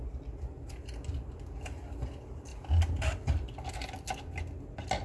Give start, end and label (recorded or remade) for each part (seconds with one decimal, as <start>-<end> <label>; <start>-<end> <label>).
0.0-5.0 recorded